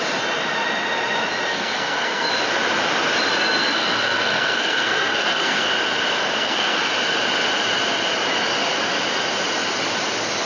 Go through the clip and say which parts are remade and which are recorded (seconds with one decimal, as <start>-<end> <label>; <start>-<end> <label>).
0.0-1.5 recorded; 1.5-2.3 remade; 2.3-3.6 recorded; 3.6-5.7 remade; 5.7-6.2 recorded; 6.2-6.9 remade; 6.9-10.5 recorded